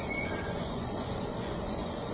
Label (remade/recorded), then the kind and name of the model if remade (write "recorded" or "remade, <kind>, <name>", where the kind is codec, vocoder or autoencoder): remade, vocoder, Vocos